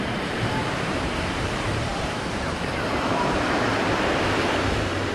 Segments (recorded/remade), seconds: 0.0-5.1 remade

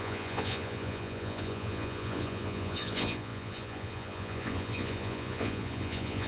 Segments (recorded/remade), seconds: 0.0-6.3 remade

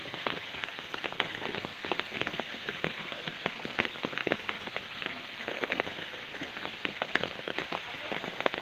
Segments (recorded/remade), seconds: 0.0-7.6 remade; 7.6-8.2 recorded; 8.2-8.6 remade

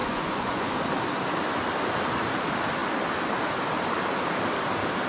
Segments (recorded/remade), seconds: 0.0-0.7 remade; 0.7-5.1 recorded